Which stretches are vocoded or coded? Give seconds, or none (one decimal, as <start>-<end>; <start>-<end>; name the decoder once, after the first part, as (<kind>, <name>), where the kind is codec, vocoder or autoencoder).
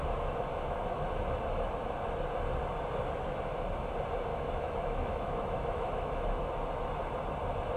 0.5-1.1 (autoencoder, DAC-VAE); 4.3-6.5